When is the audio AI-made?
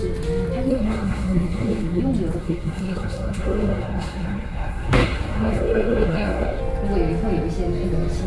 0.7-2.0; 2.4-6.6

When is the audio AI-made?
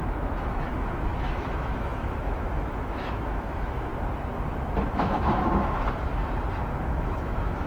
0.0-3.9; 4.9-6.1; 6.7-7.7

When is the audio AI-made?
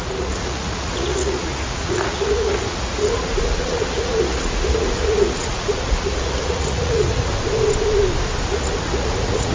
0.0-7.3; 8.5-9.5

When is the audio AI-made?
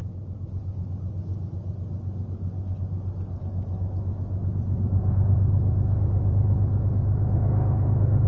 none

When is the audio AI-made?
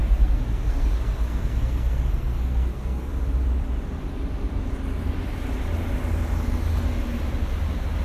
0.0-3.1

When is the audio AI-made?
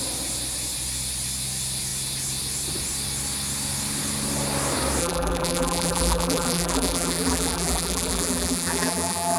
5.0-9.4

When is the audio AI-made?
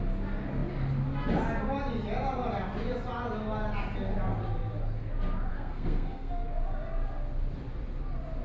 5.5-6.3